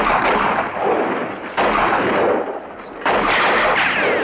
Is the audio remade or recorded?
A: recorded